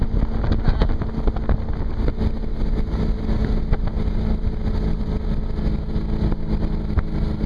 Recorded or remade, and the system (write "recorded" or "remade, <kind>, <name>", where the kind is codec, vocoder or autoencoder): recorded